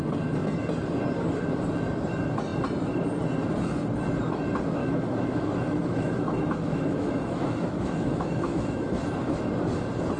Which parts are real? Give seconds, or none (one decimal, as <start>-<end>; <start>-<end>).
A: 0.0-4.8; 9.5-10.2